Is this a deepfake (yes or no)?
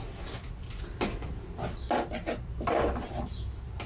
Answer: no